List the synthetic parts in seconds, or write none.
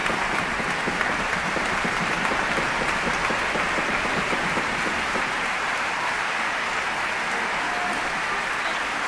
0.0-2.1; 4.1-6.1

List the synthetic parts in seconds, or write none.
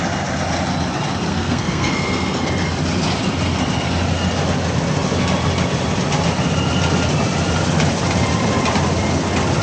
1.3-2.5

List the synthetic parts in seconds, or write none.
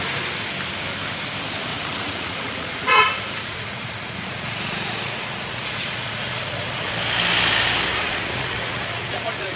1.7-6.9; 7.9-9.6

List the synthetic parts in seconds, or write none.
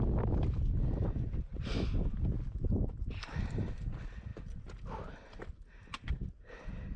4.3-6.6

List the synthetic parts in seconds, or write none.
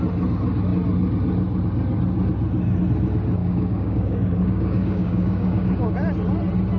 3.4-5.9